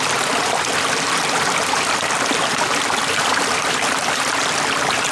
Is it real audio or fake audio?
fake